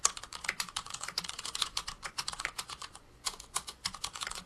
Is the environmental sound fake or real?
fake